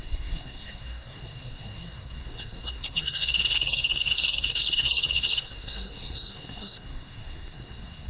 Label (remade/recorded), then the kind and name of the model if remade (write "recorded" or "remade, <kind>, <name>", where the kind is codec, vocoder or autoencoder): remade, codec, SNAC